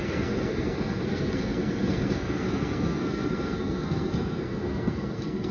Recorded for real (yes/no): no